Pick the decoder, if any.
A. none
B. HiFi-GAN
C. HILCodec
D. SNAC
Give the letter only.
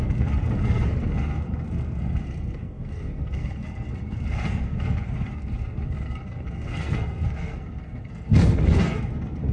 D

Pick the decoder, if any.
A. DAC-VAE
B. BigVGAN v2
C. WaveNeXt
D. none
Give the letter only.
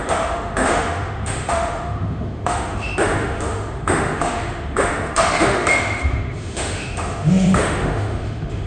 A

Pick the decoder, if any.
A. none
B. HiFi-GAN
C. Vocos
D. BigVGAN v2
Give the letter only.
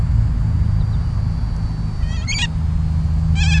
A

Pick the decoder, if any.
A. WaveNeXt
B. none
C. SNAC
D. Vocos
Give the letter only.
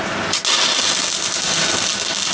B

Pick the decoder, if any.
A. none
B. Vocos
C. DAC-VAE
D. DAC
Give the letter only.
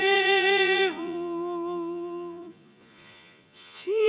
B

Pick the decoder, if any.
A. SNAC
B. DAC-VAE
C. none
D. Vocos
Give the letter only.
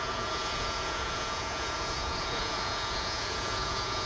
D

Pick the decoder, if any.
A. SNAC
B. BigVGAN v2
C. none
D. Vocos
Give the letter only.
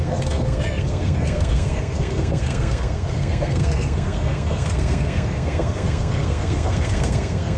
A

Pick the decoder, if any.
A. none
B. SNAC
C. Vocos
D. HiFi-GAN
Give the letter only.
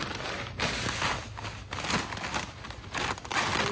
A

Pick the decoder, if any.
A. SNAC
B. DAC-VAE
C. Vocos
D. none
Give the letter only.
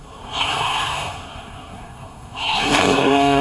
A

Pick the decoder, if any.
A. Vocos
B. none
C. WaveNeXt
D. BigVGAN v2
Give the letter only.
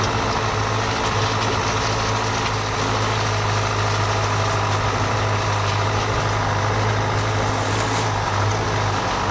B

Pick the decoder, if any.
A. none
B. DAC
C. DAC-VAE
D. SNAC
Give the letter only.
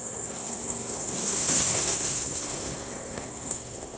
D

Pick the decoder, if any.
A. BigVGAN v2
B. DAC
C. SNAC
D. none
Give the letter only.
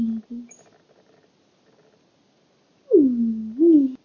D